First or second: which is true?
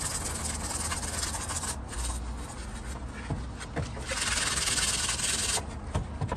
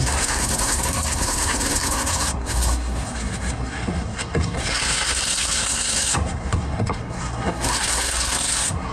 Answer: first